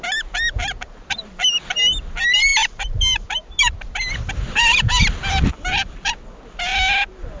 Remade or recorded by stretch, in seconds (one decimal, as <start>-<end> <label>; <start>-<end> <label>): 0.0-7.4 recorded

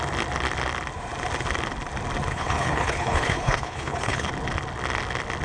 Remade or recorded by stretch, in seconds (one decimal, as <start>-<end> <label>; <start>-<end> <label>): 0.0-2.3 recorded; 2.3-4.3 remade; 4.3-5.4 recorded

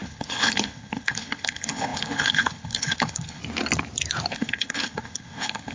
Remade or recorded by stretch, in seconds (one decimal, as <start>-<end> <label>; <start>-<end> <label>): 0.0-3.4 remade; 3.4-4.3 recorded; 4.3-5.7 remade

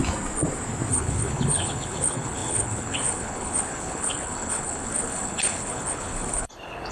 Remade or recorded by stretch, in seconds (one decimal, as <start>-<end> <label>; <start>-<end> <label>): 0.0-0.9 recorded; 0.9-6.9 remade

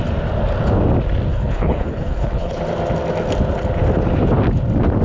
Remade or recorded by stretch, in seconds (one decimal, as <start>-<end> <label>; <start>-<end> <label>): 0.0-1.3 recorded; 1.3-2.6 remade; 2.6-5.0 recorded

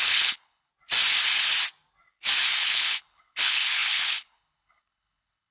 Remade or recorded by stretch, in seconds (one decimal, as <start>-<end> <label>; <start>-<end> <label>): 0.0-0.7 remade; 0.7-2.6 recorded; 2.6-5.5 remade

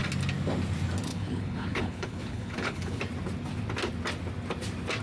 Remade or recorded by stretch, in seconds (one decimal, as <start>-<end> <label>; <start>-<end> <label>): 0.0-1.1 recorded; 1.1-3.0 remade; 3.0-5.0 recorded